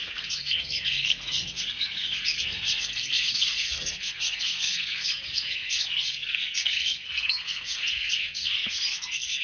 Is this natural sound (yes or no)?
no